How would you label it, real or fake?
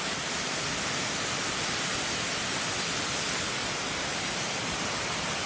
real